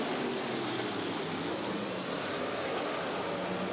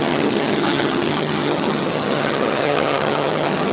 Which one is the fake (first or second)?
second